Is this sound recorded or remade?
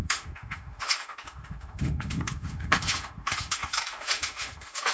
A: remade